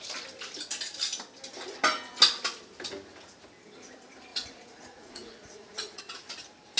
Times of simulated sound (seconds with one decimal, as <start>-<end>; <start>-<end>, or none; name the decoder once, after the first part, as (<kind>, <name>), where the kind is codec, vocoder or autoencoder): 4.3-6.0 (vocoder, Vocos)